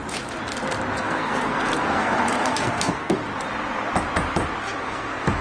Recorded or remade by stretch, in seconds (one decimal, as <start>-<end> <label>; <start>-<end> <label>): 0.0-1.0 recorded; 1.0-3.2 remade; 3.2-4.6 recorded; 4.6-5.4 remade